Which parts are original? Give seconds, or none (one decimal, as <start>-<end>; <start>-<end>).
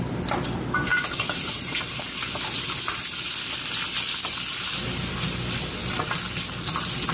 0.0-0.9; 1.8-7.1